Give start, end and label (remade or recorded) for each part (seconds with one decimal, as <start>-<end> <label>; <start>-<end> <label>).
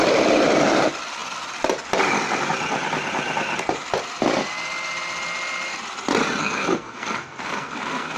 0.0-6.4 recorded; 6.4-8.2 remade